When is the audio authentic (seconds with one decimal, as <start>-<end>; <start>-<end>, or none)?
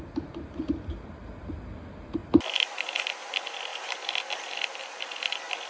0.0-5.7